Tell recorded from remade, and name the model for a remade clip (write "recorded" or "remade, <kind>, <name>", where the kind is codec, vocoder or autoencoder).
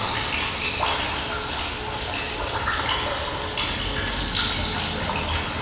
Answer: recorded